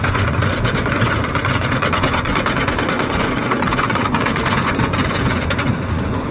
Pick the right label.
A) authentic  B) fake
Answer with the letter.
B